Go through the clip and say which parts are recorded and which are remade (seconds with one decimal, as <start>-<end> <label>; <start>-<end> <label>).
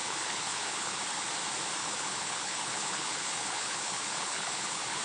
0.0-1.0 remade; 1.0-1.8 recorded; 1.8-5.0 remade